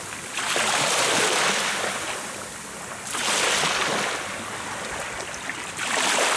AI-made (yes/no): no